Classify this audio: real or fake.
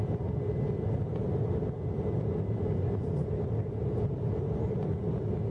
real